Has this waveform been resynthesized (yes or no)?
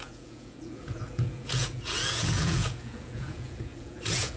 yes